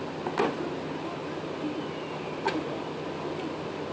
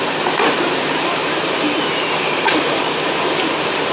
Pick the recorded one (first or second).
first